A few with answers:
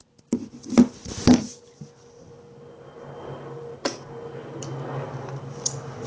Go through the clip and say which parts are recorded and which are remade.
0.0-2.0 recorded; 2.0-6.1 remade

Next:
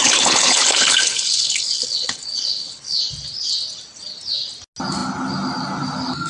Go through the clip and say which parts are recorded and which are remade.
0.0-3.1 remade; 3.1-6.3 recorded

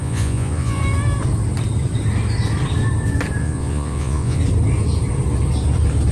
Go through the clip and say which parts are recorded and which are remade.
0.0-0.8 remade; 0.8-3.4 recorded; 3.4-4.4 remade; 4.4-6.1 recorded